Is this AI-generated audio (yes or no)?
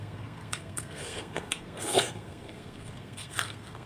yes